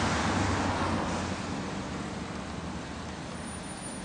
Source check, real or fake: real